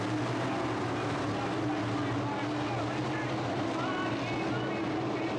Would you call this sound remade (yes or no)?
no